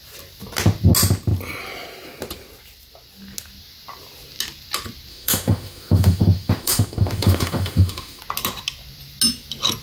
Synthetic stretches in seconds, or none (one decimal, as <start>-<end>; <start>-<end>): 5.1-8.2